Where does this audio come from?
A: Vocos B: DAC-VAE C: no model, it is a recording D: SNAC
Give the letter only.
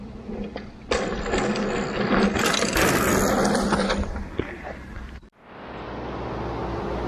C